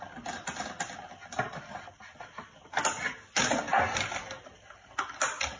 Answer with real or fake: real